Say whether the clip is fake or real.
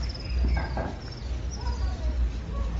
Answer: real